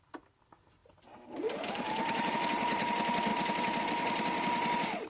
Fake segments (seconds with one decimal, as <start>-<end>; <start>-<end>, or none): 0.8-2.3